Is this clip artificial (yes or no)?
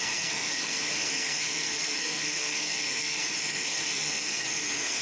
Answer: yes